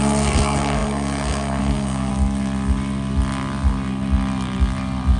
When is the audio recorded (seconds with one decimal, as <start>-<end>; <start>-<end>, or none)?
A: 2.1-5.2